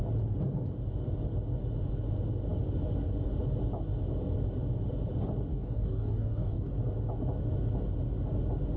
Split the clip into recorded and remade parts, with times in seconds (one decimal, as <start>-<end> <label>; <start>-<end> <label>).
0.0-5.5 recorded; 5.5-6.7 remade; 6.7-8.8 recorded